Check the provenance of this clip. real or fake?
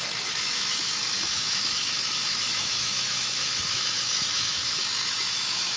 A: fake